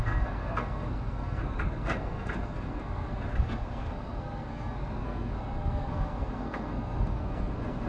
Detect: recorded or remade remade